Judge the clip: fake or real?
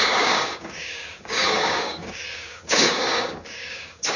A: fake